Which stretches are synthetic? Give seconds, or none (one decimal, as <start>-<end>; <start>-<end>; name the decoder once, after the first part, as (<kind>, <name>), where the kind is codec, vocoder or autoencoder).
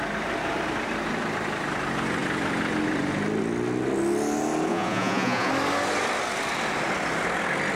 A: 4.7-5.5 (vocoder, Vocos)